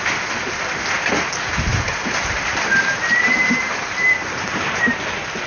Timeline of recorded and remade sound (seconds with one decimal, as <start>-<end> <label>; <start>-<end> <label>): 0.0-1.7 recorded; 1.7-5.0 remade; 5.0-5.5 recorded